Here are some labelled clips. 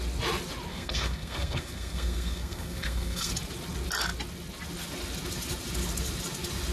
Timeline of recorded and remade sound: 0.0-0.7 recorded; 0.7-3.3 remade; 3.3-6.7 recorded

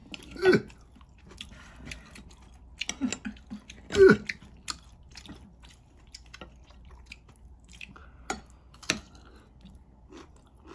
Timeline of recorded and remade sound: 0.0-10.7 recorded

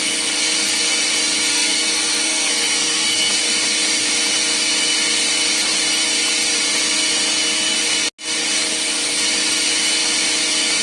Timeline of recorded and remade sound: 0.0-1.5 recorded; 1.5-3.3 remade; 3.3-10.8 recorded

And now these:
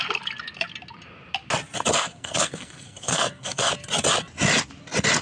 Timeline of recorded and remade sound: 0.0-1.9 recorded; 1.9-3.7 remade; 3.7-5.2 recorded